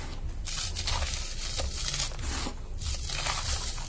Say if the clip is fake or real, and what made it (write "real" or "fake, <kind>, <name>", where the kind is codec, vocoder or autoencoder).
real